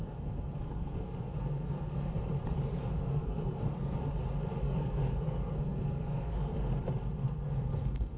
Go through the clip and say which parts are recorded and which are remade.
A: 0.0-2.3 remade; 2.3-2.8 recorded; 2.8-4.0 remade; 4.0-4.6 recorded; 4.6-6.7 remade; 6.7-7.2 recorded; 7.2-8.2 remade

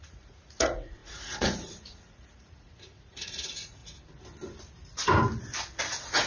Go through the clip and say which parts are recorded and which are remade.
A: 0.0-3.8 remade; 3.8-5.8 recorded; 5.8-6.3 remade

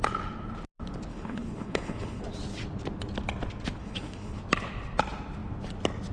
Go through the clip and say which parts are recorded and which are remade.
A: 0.0-1.1 recorded; 1.1-2.2 remade; 2.2-3.8 recorded; 3.8-4.4 remade; 4.4-6.1 recorded